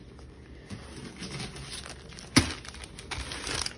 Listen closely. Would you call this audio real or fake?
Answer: real